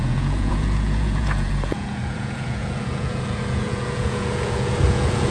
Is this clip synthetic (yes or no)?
yes